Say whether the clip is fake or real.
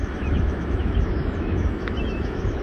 fake